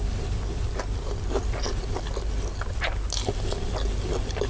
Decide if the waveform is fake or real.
real